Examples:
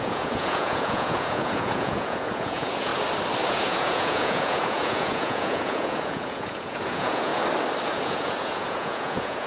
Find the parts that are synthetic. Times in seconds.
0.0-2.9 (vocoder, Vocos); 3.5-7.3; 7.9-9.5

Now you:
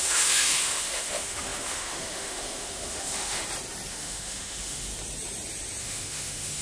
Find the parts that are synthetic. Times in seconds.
0.0-3.4 (autoencoder, DAC-VAE); 3.9-4.9; 5.8-6.6

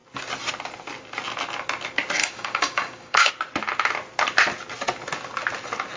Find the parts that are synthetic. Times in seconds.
2.2-3.3 (codec, DAC)

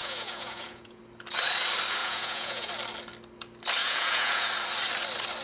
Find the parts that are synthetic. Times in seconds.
0.0-1.0 (vocoder, Vocos); 2.0-2.7; 3.8-4.5

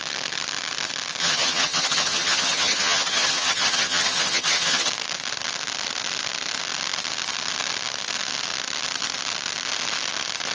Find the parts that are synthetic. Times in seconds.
1.2-4.9 (vocoder, HiFi-GAN)

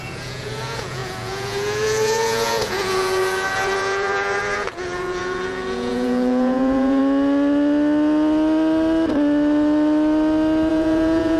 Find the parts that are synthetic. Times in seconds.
0.0-7.0 (vocoder, Vocos); 10.7-11.4

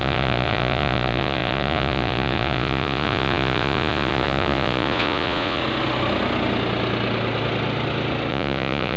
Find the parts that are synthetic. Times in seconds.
0.0-5.6 (vocoder, Vocos); 8.3-9.0

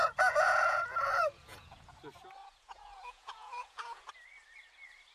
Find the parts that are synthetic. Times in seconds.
0.0-2.0 (vocoder, Vocos); 2.4-4.1